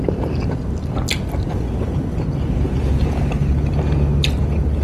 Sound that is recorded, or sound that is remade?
recorded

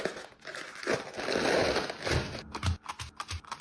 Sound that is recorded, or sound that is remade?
recorded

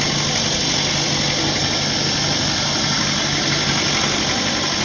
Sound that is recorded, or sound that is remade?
recorded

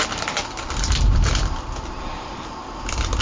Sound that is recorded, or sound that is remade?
recorded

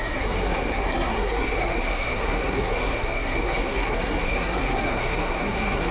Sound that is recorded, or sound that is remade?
remade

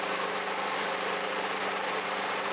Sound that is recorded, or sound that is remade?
remade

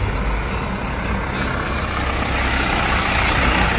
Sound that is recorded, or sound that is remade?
recorded